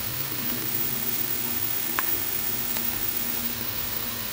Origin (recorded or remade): remade